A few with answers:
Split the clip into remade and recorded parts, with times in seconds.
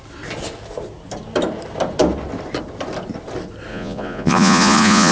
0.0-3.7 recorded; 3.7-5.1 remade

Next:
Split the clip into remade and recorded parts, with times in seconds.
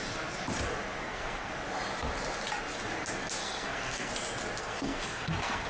0.0-1.0 recorded; 1.0-1.5 remade; 1.5-3.4 recorded; 3.4-4.1 remade; 4.1-4.6 recorded; 4.6-5.7 remade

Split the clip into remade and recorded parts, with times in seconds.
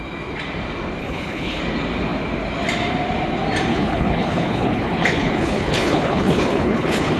0.0-1.0 recorded; 1.0-1.6 remade; 1.6-3.7 recorded; 3.7-7.2 remade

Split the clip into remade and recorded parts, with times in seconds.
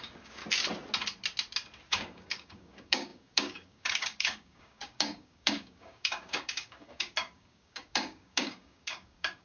0.0-0.4 remade; 0.4-1.9 recorded; 1.9-9.4 remade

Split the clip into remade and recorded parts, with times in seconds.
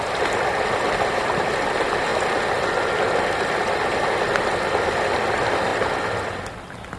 0.0-7.0 recorded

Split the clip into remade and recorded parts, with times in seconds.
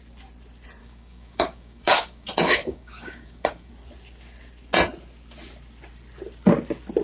0.0-0.8 recorded; 0.8-3.7 remade; 3.7-7.0 recorded